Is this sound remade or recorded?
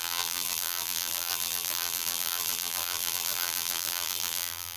remade